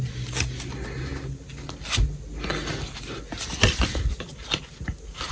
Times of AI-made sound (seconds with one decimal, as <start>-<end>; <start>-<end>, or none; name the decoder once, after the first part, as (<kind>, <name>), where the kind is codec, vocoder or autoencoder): none